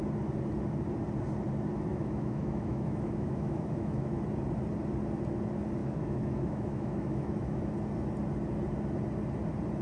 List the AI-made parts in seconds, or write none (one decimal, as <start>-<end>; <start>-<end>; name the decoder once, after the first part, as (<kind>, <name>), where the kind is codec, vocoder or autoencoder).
1.9-4.1 (autoencoder, DAC-VAE); 5.8-7.6